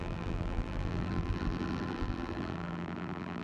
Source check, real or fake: fake